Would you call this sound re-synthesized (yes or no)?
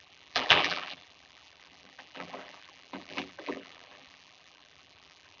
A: yes